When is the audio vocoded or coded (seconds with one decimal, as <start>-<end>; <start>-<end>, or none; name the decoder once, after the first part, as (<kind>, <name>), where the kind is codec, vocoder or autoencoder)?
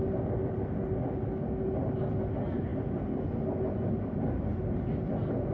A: none